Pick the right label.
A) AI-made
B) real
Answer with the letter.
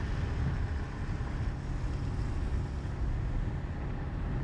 B